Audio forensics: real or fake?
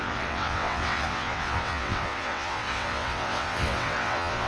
fake